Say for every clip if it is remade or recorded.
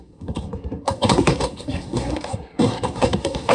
remade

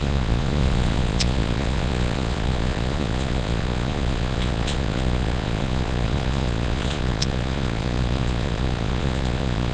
remade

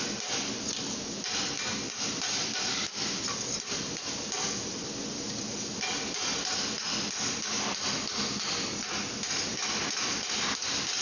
recorded